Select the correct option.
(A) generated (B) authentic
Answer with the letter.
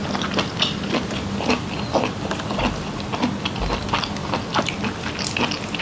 B